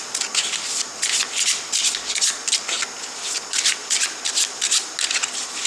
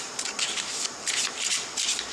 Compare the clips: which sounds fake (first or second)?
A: second